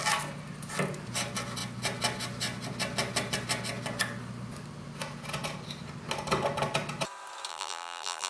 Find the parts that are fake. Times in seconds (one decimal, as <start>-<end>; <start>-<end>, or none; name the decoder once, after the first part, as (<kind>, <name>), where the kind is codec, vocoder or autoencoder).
7.5-8.3 (vocoder, BigVGAN v2)